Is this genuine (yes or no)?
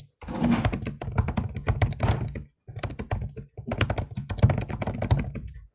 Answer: yes